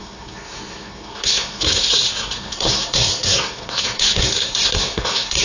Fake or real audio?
fake